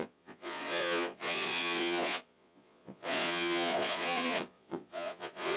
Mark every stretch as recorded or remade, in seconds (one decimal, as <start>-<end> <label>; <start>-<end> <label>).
0.0-5.6 remade